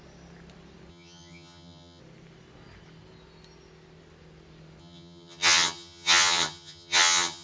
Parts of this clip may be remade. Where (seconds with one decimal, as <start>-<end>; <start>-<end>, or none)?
0.9-2.0; 4.8-7.4